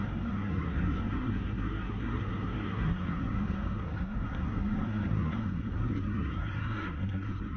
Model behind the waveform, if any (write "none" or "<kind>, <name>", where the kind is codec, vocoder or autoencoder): codec, SNAC